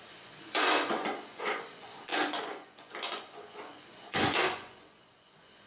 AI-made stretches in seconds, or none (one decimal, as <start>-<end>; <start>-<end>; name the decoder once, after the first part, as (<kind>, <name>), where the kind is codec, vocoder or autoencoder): 0.0-5.7 (vocoder, Vocos)